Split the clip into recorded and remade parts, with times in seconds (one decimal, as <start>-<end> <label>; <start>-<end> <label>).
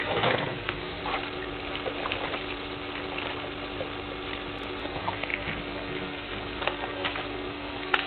0.0-1.0 remade; 1.0-4.8 recorded; 4.8-8.1 remade